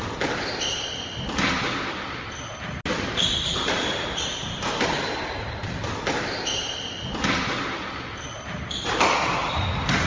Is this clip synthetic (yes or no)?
no